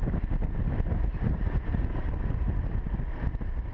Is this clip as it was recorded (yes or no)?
yes